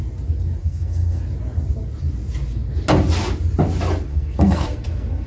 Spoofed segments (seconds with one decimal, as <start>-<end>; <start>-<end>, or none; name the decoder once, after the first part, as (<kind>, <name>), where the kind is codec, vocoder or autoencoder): 0.6-1.2 (codec, SNAC); 4.1-5.3